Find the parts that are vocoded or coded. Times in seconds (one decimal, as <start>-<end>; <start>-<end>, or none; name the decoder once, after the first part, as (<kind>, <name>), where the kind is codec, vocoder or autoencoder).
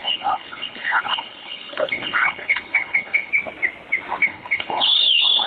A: 0.0-3.3 (codec, HILCodec); 4.2-5.5